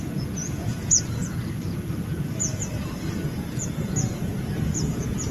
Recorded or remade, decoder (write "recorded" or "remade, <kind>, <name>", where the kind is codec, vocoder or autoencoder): remade, vocoder, Vocos